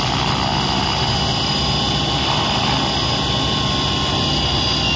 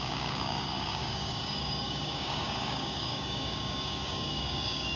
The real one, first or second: first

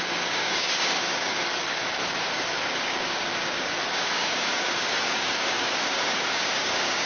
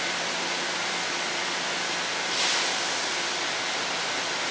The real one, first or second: second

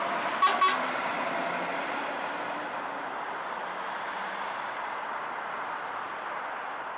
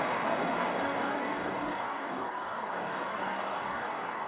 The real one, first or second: first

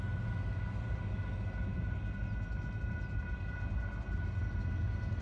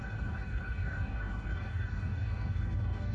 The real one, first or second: first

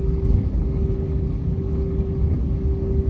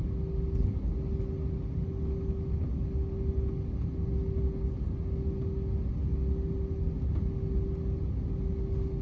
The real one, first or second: second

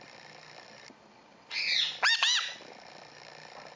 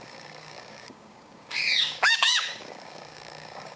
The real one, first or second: first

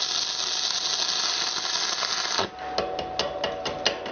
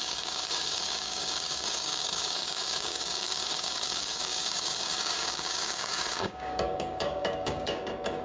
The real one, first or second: first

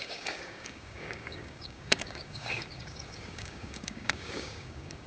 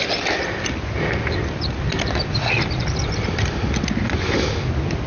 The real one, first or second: second